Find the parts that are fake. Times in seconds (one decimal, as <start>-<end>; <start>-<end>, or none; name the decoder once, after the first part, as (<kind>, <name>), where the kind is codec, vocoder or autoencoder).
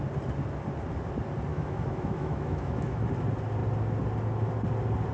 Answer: 1.5-3.1 (autoencoder, DAC-VAE)